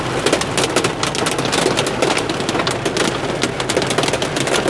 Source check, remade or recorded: recorded